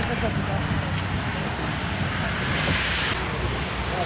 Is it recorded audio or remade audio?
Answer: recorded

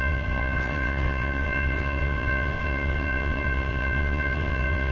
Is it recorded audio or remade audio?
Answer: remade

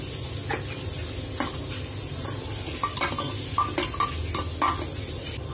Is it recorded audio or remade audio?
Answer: recorded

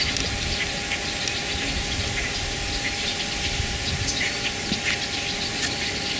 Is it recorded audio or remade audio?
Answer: recorded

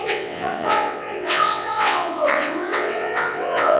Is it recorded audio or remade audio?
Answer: remade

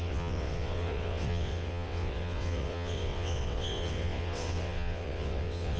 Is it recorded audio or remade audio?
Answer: remade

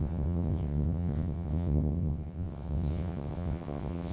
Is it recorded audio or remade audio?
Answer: remade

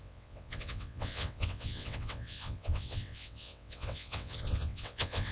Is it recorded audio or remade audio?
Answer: remade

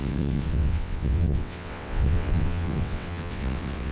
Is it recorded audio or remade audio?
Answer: remade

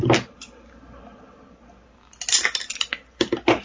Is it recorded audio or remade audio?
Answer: recorded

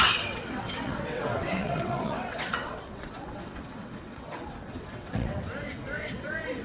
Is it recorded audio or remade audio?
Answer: remade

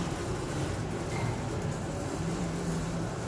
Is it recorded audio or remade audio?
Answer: recorded